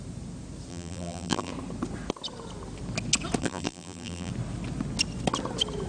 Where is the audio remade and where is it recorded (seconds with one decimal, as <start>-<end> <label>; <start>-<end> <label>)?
0.0-0.7 recorded; 0.7-1.5 remade; 1.5-3.4 recorded; 3.4-4.3 remade; 4.3-5.9 recorded